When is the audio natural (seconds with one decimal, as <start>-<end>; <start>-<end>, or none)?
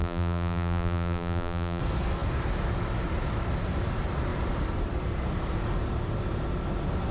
1.8-7.1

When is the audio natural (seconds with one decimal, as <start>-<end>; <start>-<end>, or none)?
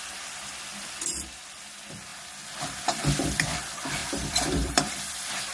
2.1-2.6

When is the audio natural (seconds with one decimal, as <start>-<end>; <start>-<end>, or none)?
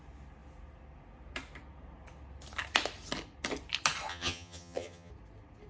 0.0-4.1; 5.1-5.7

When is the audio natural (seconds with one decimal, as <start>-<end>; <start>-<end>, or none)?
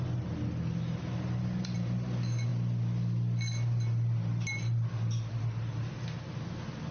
0.0-6.9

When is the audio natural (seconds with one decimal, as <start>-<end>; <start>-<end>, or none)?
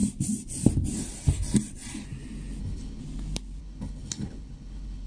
0.0-2.6; 3.0-3.6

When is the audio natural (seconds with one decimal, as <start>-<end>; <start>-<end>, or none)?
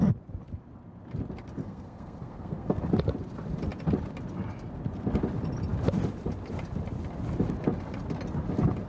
0.0-1.6; 2.9-8.9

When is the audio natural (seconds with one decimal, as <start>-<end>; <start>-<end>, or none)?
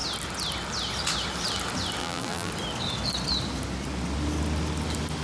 0.0-2.0; 2.5-5.2